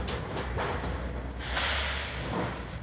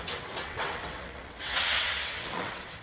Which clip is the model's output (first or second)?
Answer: second